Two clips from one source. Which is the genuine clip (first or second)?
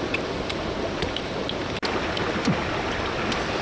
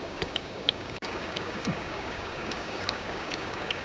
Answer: first